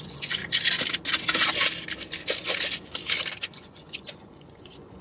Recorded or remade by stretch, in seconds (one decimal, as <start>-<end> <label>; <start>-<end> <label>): 0.0-0.4 remade; 0.4-3.4 recorded; 3.4-5.0 remade